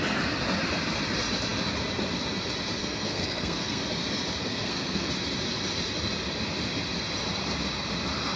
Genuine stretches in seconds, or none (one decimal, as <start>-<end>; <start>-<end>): 0.0-2.8; 3.8-4.4; 5.1-8.4